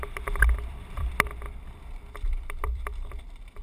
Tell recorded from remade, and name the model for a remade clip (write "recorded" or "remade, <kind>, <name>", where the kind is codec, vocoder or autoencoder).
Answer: remade, vocoder, BigVGAN v2